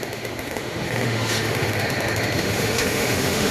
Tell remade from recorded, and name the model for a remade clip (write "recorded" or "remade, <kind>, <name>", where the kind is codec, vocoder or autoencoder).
remade, autoencoder, DAC-VAE